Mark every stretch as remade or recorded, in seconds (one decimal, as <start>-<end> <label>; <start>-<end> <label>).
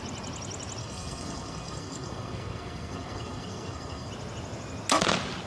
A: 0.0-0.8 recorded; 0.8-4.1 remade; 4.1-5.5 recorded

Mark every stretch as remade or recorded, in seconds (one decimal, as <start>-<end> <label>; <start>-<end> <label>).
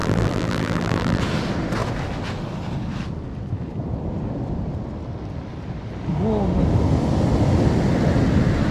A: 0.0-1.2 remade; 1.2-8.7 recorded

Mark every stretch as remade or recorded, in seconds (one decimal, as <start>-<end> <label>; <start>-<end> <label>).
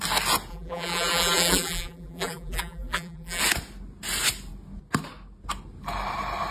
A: 0.0-0.5 recorded; 0.5-3.4 remade; 3.4-6.5 recorded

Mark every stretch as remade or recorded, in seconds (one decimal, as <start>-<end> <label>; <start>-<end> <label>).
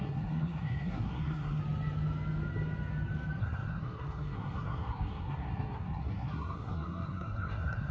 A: 0.0-1.6 remade; 1.6-3.4 recorded; 3.4-7.9 remade